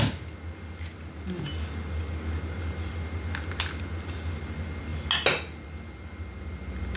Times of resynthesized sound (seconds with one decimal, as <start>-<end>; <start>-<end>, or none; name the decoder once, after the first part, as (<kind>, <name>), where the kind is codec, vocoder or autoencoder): none